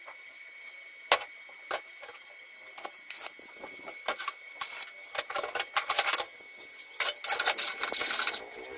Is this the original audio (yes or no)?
yes